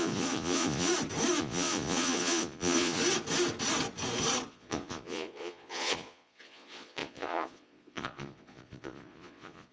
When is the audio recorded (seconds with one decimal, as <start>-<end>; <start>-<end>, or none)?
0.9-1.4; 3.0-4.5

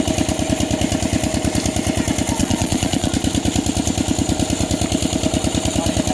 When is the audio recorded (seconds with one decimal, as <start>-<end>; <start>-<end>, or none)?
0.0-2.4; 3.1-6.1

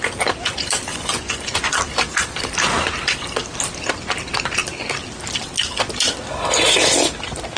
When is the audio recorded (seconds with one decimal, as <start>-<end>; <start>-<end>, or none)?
0.0-0.9; 1.8-7.6

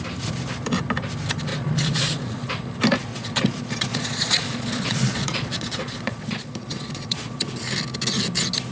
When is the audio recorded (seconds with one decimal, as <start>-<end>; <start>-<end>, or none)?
0.0-1.5; 2.5-3.1; 7.5-8.7

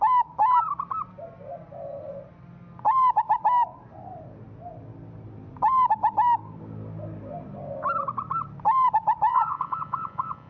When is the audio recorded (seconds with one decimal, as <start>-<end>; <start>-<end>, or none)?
0.0-9.3

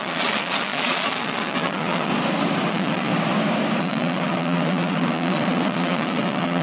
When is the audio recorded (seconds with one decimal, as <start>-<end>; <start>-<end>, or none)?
2.1-2.7; 3.1-3.8